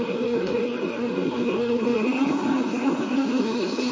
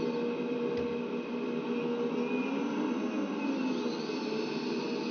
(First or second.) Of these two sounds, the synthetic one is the first